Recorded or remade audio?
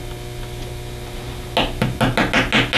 recorded